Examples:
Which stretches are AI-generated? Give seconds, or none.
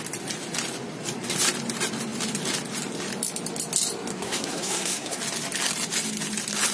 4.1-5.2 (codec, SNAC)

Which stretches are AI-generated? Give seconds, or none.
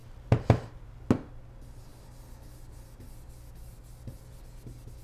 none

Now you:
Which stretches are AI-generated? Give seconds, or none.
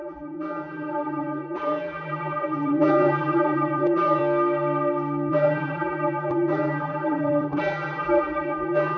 0.0-4.2 (vocoder, BigVGAN v2); 5.3-9.0